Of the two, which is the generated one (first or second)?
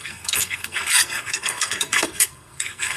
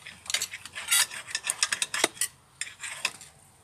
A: first